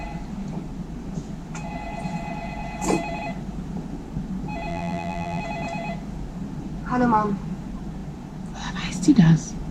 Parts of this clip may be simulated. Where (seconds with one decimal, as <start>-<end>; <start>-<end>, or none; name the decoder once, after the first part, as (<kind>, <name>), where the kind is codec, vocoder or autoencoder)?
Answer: 4.7-5.4 (vocoder, BigVGAN v2)